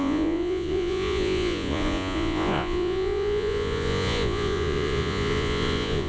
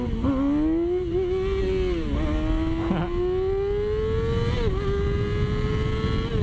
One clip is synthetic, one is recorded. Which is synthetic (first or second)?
first